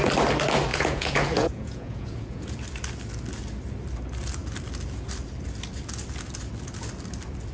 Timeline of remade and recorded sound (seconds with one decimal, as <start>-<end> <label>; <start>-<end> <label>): 0.0-0.7 recorded; 0.7-2.6 remade; 2.6-7.5 recorded